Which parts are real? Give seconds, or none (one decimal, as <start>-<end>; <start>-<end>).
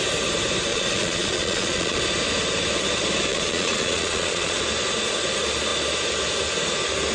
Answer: 0.0-0.7; 2.0-3.3; 4.6-7.1